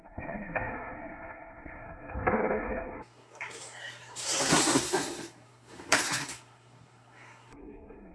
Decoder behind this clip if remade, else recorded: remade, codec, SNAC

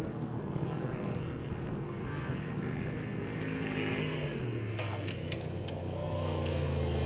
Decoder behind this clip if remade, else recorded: remade, codec, SNAC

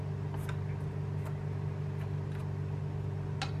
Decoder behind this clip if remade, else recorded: recorded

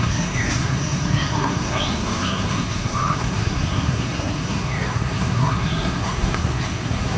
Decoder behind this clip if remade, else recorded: remade, codec, SNAC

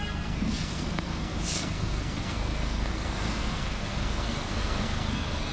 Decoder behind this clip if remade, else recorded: remade, codec, SNAC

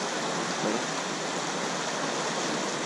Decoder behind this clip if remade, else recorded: recorded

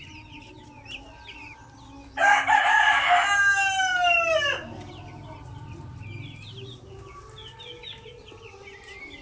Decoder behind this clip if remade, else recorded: recorded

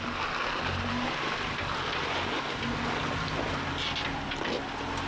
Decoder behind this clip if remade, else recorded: recorded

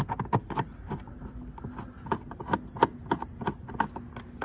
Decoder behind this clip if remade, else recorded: recorded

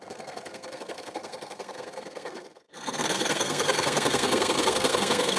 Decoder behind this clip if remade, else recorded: remade, codec, SNAC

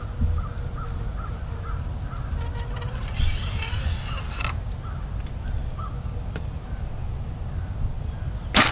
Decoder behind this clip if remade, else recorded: recorded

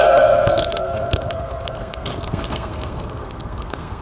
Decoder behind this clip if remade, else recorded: remade, codec, SNAC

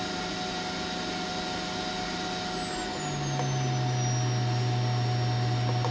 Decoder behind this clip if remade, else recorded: recorded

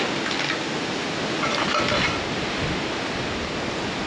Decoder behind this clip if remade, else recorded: recorded